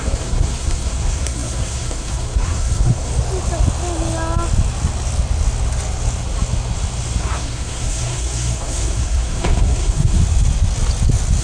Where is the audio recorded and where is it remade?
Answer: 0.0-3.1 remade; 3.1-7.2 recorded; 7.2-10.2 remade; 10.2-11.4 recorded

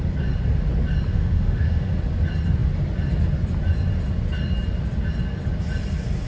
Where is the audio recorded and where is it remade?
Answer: 0.0-1.1 recorded; 1.1-1.9 remade; 1.9-6.3 recorded

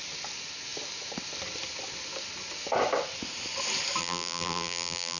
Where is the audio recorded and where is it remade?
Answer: 0.0-4.0 recorded; 4.0-5.2 remade

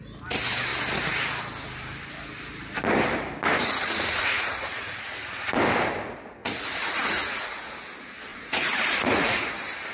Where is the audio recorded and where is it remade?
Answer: 0.0-3.6 recorded; 3.6-5.5 remade; 5.5-6.4 recorded; 6.4-7.7 remade; 7.7-8.3 recorded; 8.3-9.5 remade; 9.5-9.9 recorded

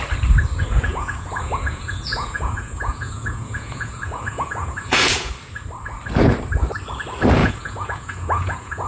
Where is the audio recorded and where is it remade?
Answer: 0.0-0.9 recorded; 0.9-5.3 remade; 5.3-7.4 recorded; 7.4-8.9 remade

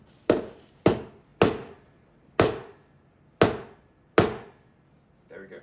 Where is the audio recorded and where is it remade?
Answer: 0.0-5.6 recorded